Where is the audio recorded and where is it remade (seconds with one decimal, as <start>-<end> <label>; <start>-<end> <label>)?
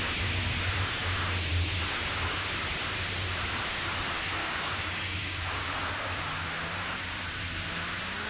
0.0-4.4 recorded; 4.4-5.9 remade; 5.9-8.3 recorded